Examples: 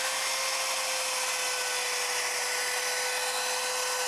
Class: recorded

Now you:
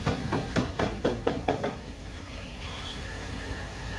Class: remade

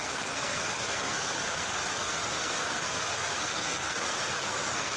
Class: remade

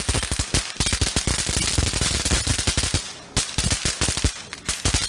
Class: recorded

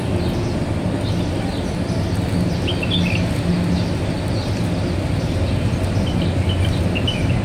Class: recorded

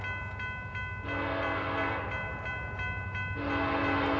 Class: recorded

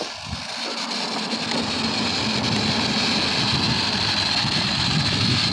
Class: recorded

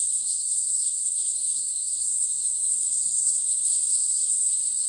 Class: remade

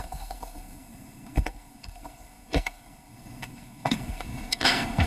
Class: remade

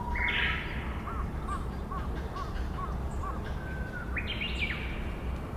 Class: recorded